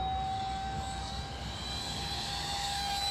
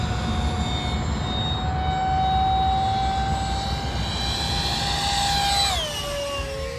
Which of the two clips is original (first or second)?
second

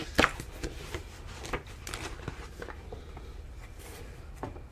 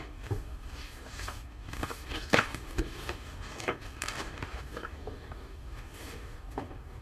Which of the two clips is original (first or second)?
first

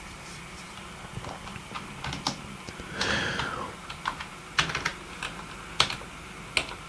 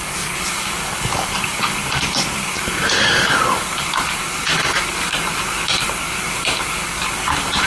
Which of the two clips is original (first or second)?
first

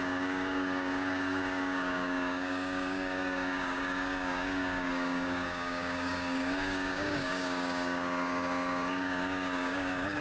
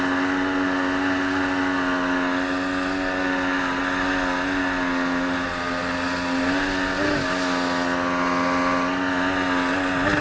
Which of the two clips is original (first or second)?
second